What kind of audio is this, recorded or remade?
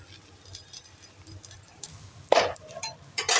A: remade